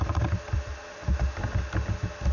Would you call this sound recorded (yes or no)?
yes